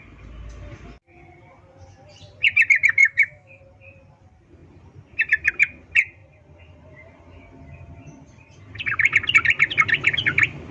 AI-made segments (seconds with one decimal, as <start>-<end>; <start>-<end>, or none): 3.0-3.6